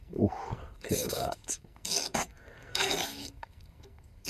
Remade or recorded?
remade